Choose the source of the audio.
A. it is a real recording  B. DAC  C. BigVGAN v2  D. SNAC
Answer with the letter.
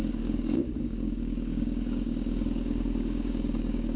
B